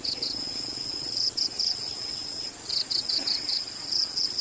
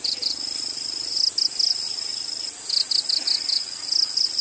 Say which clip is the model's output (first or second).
first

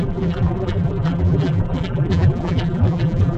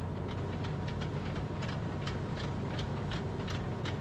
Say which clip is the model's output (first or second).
first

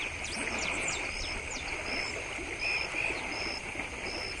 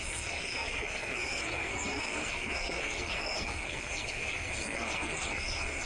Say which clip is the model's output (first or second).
second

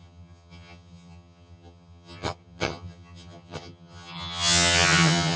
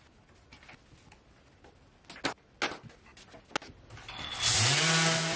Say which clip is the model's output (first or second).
first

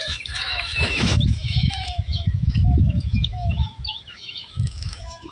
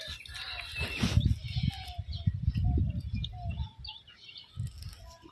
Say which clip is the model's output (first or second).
first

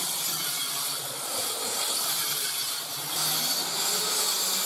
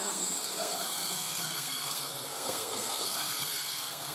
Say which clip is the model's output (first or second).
second